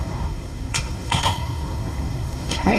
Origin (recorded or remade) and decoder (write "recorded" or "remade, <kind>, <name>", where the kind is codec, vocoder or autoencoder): remade, codec, SNAC